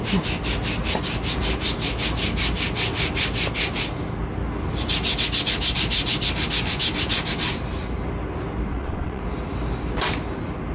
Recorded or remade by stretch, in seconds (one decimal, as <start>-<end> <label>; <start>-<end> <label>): 0.0-8.7 recorded; 8.7-9.2 remade; 9.2-10.7 recorded